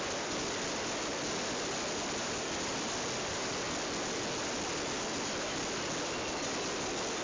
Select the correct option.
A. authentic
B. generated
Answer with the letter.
A